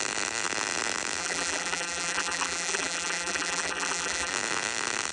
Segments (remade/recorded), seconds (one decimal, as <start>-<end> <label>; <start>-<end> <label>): 0.0-1.2 recorded; 1.2-4.3 remade; 4.3-5.1 recorded